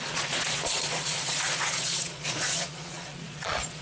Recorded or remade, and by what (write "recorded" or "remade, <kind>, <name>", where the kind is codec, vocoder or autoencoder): remade, vocoder, Vocos